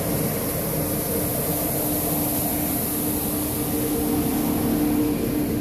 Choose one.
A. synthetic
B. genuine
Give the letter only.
B